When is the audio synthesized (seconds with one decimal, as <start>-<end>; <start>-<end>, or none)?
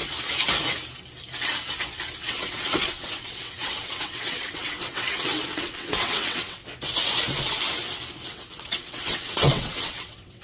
2.2-6.6; 8.3-10.4